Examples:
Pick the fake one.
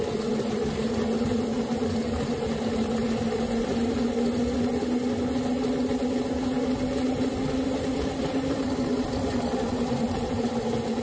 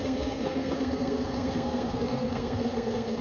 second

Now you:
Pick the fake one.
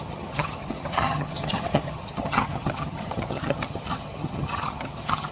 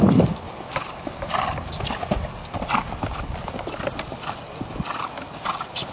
first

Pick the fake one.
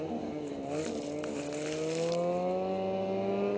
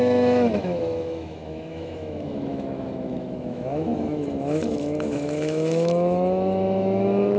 second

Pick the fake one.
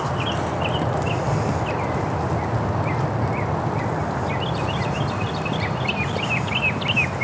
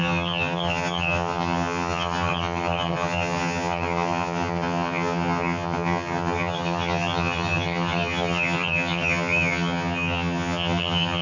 second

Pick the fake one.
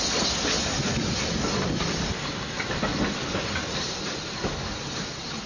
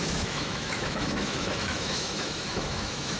second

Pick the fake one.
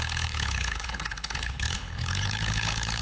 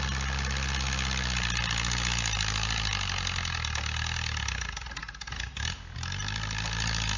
first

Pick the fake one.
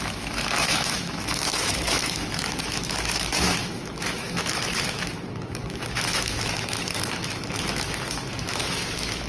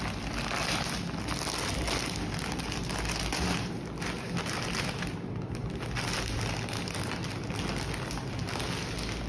first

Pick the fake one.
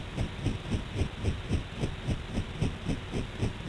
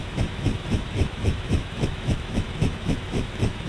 second